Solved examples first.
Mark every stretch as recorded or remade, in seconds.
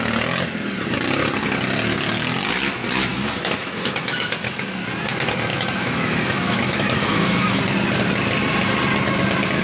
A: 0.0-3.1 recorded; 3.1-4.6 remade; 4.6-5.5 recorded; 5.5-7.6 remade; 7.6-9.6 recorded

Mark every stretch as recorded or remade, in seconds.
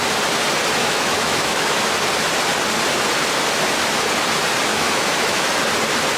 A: 0.0-0.8 recorded; 0.8-1.9 remade; 1.9-4.7 recorded; 4.7-5.5 remade; 5.5-6.2 recorded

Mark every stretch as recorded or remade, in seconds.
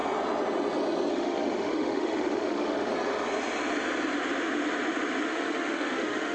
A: 0.0-1.1 recorded; 1.1-2.9 remade; 2.9-5.3 recorded; 5.3-6.3 remade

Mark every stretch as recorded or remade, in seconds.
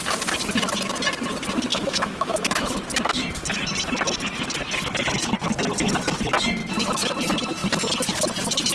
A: 0.0-1.7 recorded; 1.7-2.8 remade; 2.8-6.6 recorded; 6.6-7.1 remade; 7.1-8.7 recorded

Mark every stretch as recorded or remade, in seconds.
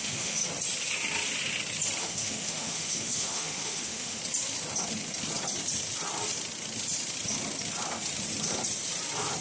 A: 0.0-0.4 remade; 0.4-2.0 recorded; 2.0-4.2 remade; 4.2-9.4 recorded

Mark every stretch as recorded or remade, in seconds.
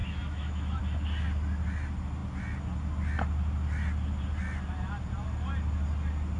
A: 0.0-0.8 remade; 0.8-6.4 recorded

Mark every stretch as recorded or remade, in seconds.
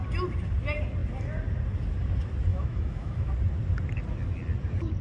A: 0.0-2.5 recorded; 2.5-3.3 remade; 3.3-5.0 recorded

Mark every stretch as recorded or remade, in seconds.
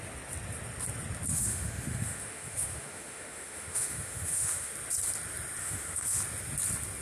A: 0.0-1.3 recorded; 1.3-4.7 remade; 4.7-5.6 recorded; 5.6-6.2 remade; 6.2-7.0 recorded